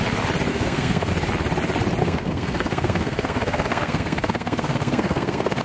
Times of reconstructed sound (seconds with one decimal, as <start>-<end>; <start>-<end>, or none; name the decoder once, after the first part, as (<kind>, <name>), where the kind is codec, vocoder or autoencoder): 0.5-1.1 (codec, SNAC); 2.0-5.6